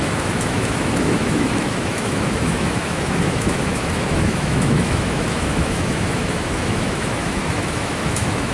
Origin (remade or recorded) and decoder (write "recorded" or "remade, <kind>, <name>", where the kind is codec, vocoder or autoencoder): remade, autoencoder, DAC-VAE